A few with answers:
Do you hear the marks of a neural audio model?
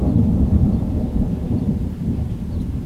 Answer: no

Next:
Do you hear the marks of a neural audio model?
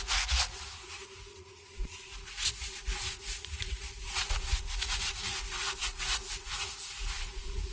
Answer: yes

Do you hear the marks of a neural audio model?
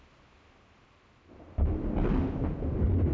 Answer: no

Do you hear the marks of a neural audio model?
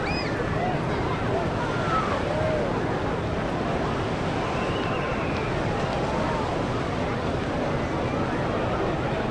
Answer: no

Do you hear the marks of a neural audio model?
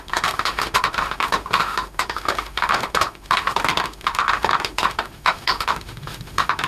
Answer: yes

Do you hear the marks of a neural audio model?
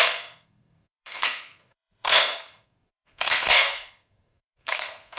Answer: yes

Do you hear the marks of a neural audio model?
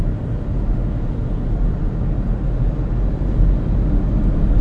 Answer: no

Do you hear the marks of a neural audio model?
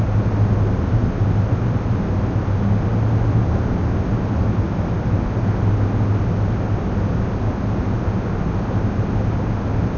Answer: no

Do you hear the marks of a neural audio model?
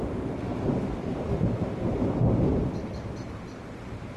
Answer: yes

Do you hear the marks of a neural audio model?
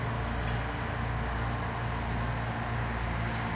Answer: no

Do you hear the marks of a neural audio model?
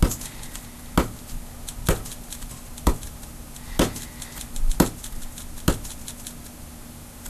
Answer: no